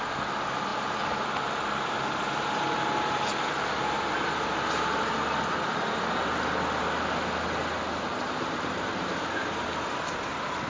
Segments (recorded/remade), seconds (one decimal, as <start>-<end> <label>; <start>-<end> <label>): 0.0-8.1 recorded; 8.1-8.9 remade; 8.9-10.7 recorded